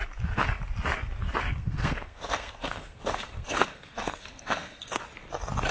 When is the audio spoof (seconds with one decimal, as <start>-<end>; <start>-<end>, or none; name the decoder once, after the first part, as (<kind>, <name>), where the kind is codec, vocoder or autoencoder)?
1.6-5.0 (codec, SNAC)

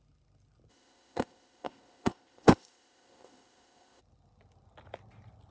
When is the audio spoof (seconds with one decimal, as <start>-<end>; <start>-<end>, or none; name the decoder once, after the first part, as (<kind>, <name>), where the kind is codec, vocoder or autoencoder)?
0.7-4.0 (codec, ZipCodec)

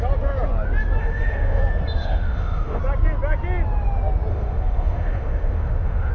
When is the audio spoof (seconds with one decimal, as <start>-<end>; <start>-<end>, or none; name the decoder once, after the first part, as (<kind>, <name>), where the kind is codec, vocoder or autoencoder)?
1.0-1.6 (autoencoder, DAC-VAE); 2.0-2.8; 4.3-6.1

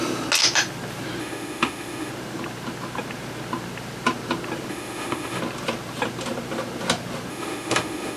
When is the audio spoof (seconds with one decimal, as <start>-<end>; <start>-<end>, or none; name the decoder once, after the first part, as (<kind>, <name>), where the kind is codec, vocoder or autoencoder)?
1.2-2.1 (autoencoder, DAC-VAE); 4.7-5.4; 7.3-8.2

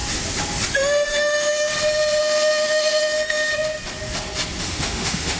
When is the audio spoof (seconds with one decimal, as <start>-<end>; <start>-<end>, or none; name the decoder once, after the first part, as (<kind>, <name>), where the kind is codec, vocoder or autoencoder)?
0.7-1.7 (autoencoder, DAC-VAE); 2.2-3.5; 4.6-5.4

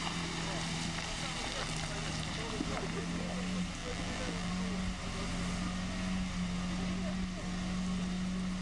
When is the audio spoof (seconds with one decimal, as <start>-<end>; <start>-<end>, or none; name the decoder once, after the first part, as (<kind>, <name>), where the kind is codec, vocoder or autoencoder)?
3.8-4.5 (vocoder, BigVGAN v2)

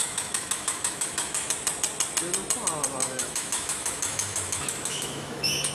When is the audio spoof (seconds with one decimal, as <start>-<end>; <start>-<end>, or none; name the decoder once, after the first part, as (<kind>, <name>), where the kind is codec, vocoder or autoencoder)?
0.0-1.5 (autoencoder, DAC-VAE); 3.0-5.7